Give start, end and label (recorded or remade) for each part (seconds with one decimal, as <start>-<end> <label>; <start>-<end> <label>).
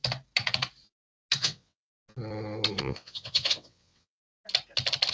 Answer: 0.0-1.4 recorded; 1.4-1.9 remade; 1.9-2.8 recorded; 2.8-4.2 remade; 4.2-5.1 recorded